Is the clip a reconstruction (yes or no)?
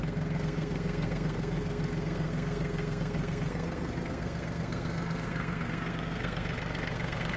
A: yes